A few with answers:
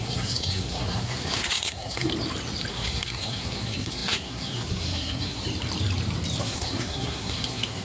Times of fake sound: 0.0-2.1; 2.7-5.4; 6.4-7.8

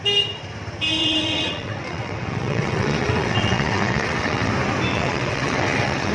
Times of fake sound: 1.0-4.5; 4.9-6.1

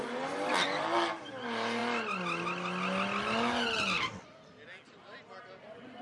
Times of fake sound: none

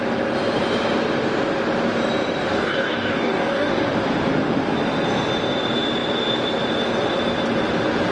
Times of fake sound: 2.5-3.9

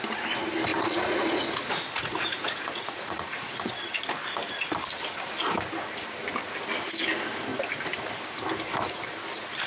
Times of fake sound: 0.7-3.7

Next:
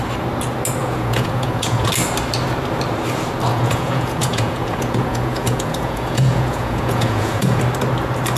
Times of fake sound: 0.8-1.9; 3.5-7.6

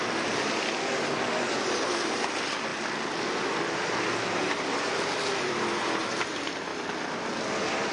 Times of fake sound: 0.0-7.9